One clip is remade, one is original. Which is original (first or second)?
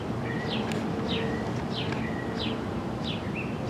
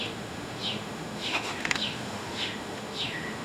first